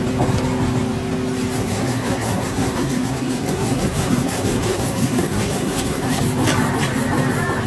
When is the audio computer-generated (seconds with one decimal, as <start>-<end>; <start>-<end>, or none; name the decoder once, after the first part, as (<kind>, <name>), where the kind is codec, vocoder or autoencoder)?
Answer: 1.6-6.2 (codec, SNAC)